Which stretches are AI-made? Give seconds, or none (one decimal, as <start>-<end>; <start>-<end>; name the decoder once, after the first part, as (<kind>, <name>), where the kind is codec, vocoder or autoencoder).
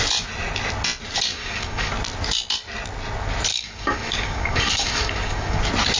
1.3-1.9 (codec, DAC); 3.5-5.6